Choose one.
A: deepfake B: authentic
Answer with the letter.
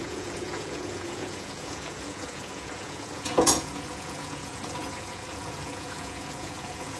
A